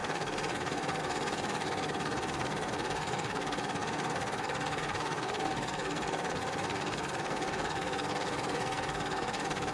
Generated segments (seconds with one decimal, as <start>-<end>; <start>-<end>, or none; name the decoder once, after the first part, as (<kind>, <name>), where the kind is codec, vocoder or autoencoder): 0.0-9.7 (codec, SNAC)